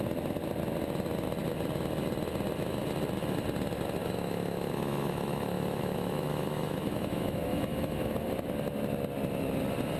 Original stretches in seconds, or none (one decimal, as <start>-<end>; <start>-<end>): 0.0-4.0; 8.3-10.0